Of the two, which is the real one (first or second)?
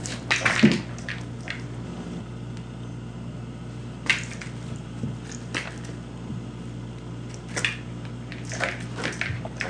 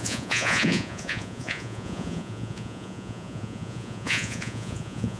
first